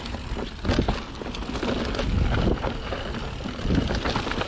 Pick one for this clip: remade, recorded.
recorded